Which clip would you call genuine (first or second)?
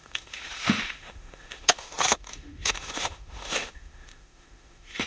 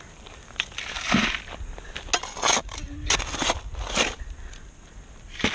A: second